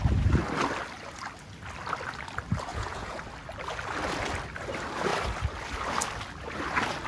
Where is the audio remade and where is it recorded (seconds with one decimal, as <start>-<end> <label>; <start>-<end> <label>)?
0.0-2.7 recorded; 2.7-3.2 remade; 3.2-7.1 recorded